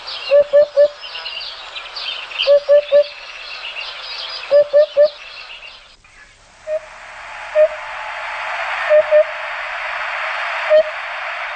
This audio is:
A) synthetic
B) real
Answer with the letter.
B